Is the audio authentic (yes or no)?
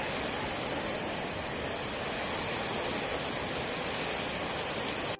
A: yes